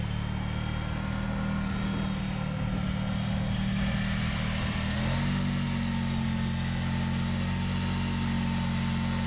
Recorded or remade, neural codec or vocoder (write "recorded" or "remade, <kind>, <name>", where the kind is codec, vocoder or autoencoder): recorded